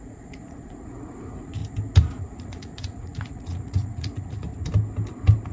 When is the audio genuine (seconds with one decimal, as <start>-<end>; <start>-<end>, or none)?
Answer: 1.6-2.2; 4.5-5.5